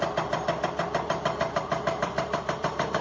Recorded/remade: remade